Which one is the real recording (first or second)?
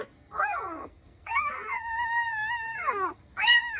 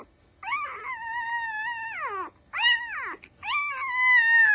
second